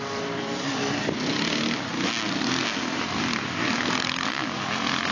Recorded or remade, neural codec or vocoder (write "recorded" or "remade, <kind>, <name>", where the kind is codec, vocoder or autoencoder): recorded